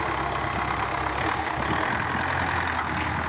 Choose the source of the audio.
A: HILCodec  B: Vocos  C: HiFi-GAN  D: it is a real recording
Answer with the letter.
D